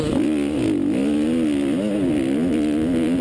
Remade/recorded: recorded